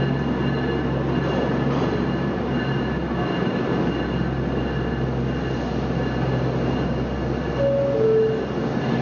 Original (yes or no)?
yes